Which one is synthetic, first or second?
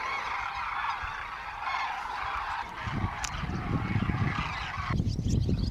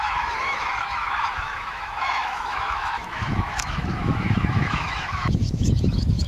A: second